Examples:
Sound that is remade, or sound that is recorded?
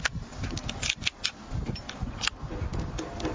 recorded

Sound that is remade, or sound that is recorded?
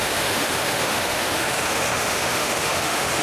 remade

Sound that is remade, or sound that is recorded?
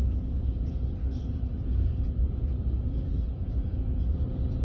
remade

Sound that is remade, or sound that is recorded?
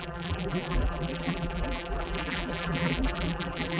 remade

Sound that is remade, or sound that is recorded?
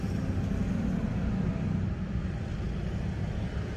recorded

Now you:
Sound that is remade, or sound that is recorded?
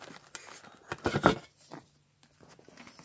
recorded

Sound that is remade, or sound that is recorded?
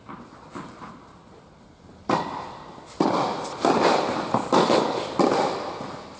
recorded